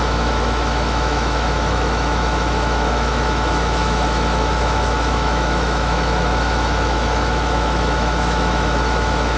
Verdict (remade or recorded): remade